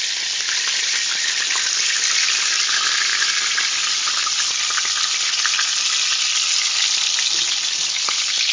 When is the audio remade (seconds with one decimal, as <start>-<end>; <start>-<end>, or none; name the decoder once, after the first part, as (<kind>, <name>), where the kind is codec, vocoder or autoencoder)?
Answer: none